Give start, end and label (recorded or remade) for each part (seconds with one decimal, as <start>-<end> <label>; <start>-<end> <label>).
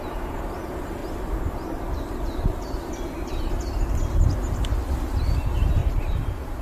0.0-5.8 recorded; 5.8-6.6 remade